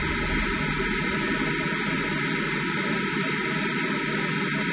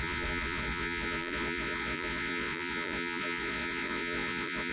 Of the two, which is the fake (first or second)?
second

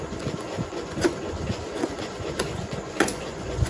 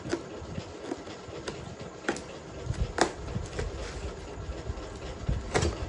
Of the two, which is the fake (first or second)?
first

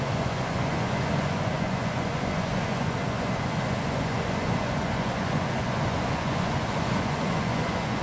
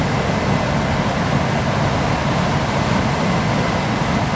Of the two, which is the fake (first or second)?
first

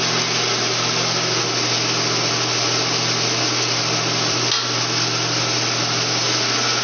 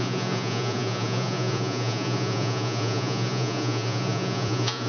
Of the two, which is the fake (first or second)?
second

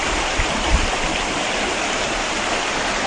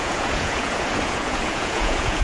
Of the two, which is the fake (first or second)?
second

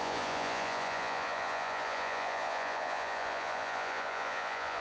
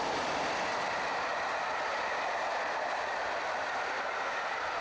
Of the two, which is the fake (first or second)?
first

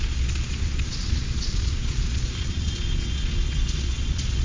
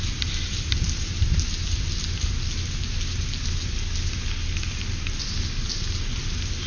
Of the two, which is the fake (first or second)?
first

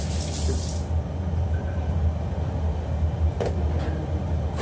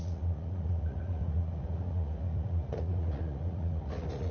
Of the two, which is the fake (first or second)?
second